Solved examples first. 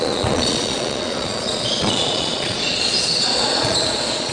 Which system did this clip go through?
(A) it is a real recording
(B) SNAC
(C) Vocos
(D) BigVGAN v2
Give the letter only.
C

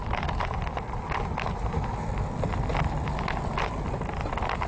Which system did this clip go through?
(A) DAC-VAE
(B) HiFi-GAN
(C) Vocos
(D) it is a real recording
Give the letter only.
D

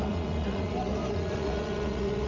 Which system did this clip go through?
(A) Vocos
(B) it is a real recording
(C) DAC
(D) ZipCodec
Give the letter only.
A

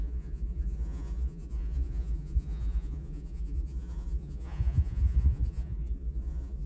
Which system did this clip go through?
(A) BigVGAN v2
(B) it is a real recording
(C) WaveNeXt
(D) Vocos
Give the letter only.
D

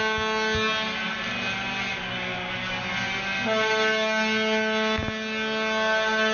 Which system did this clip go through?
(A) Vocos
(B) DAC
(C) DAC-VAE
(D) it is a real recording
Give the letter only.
D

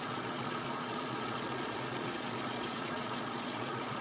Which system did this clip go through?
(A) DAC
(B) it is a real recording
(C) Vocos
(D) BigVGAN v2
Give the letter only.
C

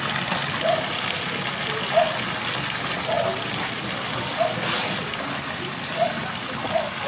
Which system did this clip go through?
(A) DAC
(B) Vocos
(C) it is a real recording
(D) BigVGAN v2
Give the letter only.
C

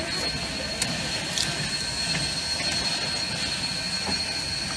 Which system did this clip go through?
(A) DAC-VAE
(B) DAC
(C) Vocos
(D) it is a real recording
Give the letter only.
D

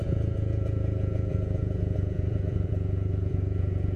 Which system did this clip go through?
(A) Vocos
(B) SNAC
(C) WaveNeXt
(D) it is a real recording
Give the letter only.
A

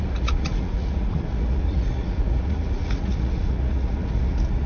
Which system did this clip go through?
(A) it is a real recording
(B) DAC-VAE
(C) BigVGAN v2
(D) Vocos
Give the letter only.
D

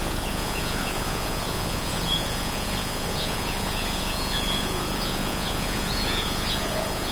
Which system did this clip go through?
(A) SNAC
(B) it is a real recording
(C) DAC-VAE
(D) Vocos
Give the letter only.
D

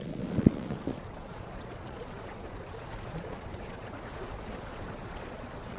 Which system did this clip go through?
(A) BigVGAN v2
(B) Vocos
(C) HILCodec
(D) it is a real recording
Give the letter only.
B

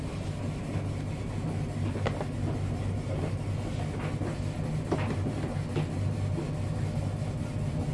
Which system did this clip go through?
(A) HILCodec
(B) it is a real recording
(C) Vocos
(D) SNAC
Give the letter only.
B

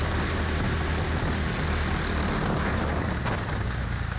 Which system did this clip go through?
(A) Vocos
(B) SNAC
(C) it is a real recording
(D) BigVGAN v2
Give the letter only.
C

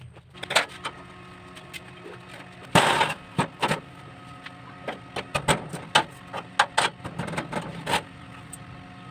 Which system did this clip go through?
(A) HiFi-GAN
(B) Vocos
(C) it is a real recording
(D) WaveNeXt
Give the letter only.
C